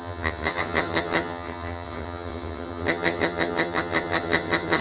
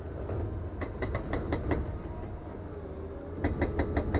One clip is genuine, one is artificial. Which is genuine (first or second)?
second